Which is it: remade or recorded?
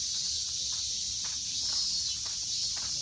recorded